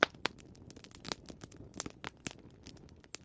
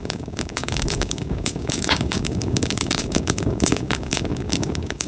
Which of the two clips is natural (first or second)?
first